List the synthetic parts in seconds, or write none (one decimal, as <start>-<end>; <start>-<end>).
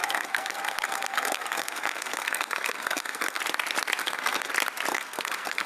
0.0-3.4; 4.0-4.5; 4.9-5.7